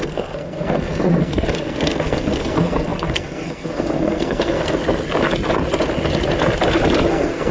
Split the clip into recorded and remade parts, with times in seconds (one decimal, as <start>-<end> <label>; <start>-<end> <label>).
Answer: 0.0-4.8 remade; 4.8-7.1 recorded; 7.1-7.5 remade